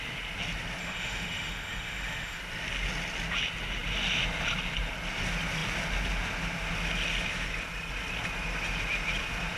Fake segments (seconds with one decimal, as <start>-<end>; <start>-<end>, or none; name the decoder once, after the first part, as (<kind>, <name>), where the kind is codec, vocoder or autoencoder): 0.8-2.4 (autoencoder, DAC-VAE)